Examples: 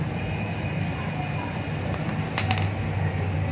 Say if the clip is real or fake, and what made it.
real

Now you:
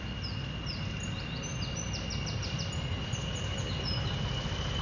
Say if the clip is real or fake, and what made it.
real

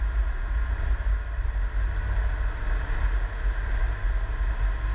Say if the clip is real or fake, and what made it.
real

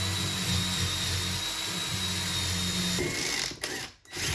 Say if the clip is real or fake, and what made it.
real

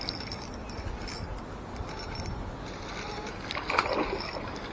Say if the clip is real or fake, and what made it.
real